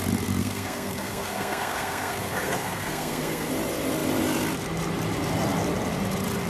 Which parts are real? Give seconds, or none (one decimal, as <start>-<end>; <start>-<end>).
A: 0.0-0.4; 3.5-6.5